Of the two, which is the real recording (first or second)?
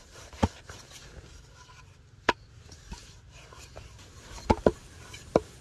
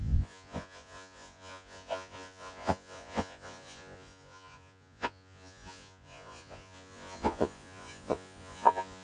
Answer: first